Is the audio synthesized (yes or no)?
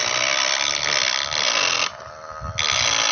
no